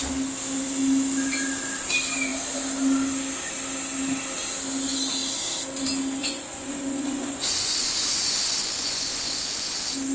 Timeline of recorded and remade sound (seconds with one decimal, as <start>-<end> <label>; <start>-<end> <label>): 0.0-6.2 recorded; 6.2-9.7 remade; 9.7-10.1 recorded